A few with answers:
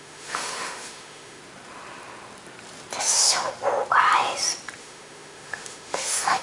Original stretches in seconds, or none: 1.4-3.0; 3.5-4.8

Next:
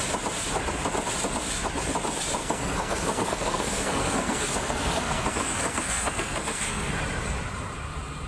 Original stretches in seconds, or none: 0.0-2.4; 6.9-8.3